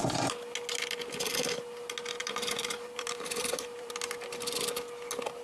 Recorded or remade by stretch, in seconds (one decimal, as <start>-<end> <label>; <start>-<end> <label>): 0.0-2.2 recorded; 2.2-3.9 remade; 3.9-5.4 recorded